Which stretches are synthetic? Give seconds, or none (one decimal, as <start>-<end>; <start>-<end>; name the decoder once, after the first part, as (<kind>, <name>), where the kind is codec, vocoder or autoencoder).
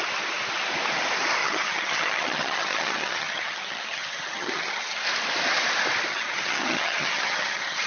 1.4-5.0 (vocoder, HiFi-GAN); 6.1-7.9